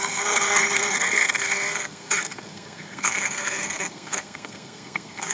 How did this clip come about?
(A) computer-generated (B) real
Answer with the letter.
A